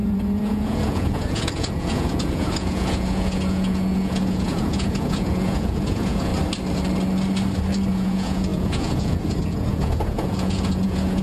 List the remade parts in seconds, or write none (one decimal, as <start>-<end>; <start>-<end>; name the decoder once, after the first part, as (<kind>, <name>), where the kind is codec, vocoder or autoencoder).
0.0-6.3 (vocoder, Vocos); 7.9-11.2